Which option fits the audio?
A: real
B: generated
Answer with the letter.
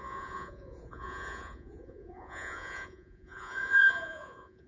B